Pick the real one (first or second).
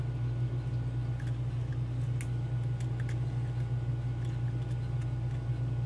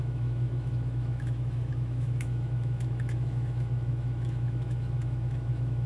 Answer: first